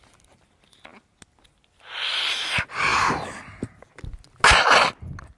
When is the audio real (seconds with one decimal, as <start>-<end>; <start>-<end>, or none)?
0.0-5.4